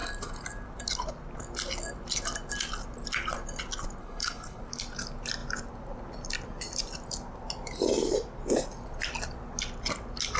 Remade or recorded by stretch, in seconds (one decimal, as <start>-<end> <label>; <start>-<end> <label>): 0.0-4.0 recorded; 4.0-4.6 remade; 4.6-10.4 recorded